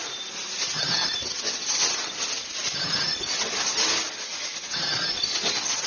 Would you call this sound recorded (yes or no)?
yes